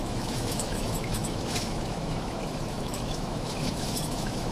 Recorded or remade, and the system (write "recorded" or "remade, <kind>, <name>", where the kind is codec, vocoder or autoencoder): remade, autoencoder, DAC-VAE